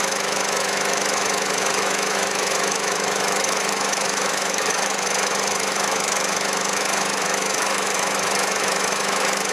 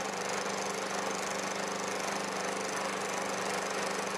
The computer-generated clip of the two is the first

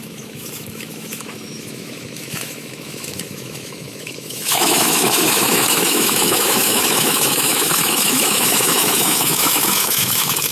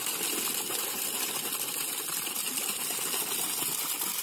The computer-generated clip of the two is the first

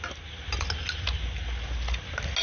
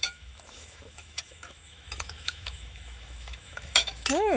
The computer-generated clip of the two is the second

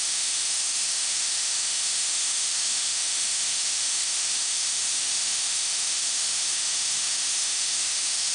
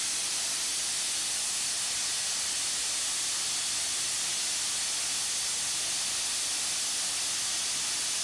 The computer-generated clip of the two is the first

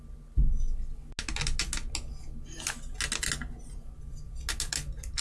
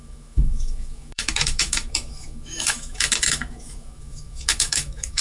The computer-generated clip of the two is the second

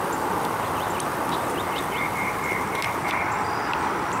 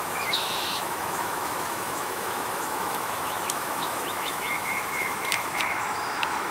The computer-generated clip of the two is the second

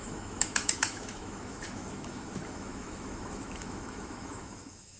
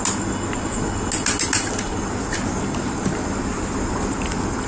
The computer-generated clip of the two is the first